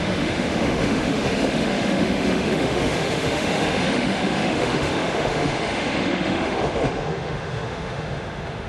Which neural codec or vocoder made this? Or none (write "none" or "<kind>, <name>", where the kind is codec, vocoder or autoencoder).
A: autoencoder, DAC-VAE